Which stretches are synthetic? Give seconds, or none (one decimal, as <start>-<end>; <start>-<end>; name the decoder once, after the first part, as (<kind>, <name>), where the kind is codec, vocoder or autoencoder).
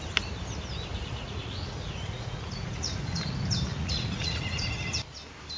0.9-3.2 (vocoder, Vocos); 3.7-4.7